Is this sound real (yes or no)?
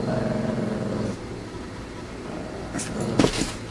yes